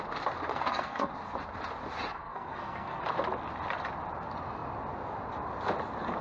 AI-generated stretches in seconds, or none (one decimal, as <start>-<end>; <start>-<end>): 0.5-1.1; 2.1-3.0